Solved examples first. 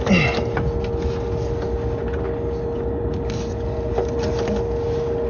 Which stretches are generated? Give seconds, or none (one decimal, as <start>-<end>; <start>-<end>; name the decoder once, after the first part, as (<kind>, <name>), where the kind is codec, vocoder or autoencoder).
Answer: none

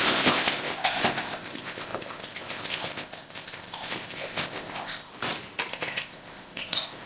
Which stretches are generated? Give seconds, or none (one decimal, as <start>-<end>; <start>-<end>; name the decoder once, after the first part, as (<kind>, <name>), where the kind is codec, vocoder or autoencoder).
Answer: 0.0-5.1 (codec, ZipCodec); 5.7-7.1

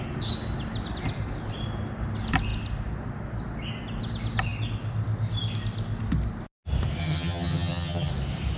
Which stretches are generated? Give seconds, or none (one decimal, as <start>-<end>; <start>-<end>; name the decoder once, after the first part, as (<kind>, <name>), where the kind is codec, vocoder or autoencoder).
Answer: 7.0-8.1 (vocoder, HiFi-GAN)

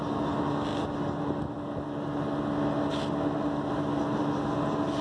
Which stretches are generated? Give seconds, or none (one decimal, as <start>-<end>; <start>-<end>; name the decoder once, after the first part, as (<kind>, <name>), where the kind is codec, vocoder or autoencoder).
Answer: none

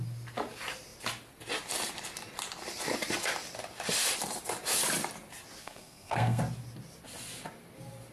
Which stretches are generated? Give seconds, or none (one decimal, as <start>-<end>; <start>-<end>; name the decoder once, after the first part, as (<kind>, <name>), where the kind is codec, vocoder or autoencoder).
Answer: 5.6-6.4 (codec, SNAC)

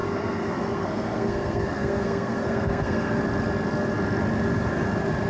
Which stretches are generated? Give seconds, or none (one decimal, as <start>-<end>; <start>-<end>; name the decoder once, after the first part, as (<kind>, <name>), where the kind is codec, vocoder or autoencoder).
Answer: 0.0-3.2 (codec, SNAC)